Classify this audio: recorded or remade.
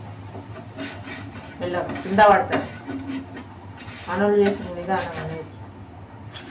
recorded